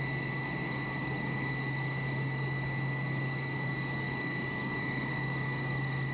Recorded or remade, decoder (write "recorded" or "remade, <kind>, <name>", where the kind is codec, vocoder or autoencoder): remade, codec, DAC